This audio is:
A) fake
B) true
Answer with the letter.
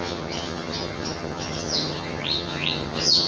A